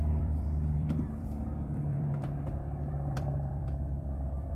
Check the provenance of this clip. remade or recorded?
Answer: remade